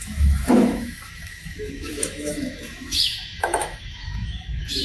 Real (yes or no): no